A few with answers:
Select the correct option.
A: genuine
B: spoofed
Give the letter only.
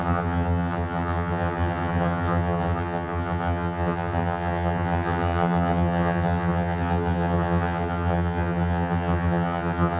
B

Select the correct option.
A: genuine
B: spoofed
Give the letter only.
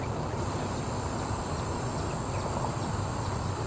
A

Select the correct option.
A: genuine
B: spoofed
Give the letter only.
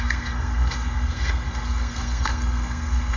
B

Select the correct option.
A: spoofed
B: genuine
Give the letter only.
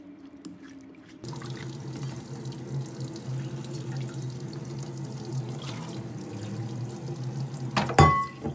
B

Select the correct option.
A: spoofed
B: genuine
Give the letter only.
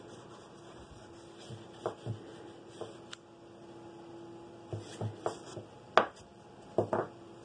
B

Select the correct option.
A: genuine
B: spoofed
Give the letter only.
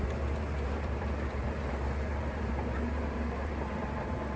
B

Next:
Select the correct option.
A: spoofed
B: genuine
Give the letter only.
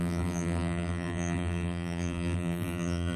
A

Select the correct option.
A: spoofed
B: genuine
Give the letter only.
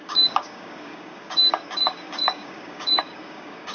A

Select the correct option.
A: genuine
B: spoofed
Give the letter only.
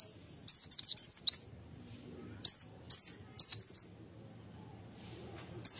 A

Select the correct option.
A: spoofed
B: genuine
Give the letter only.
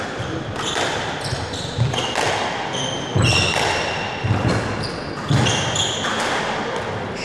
B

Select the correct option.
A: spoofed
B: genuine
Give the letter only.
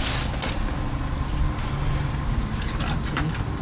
B